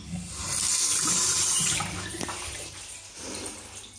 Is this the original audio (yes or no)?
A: yes